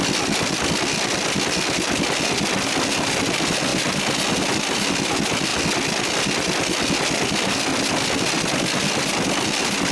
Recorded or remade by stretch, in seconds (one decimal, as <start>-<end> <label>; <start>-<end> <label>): 0.0-9.9 recorded